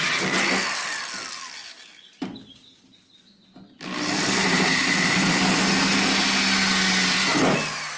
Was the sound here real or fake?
real